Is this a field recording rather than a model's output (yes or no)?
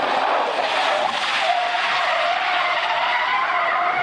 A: yes